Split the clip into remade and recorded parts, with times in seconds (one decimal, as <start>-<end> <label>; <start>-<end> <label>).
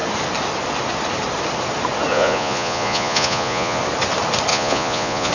0.0-2.1 recorded; 2.1-3.8 remade; 3.8-4.5 recorded; 4.5-5.3 remade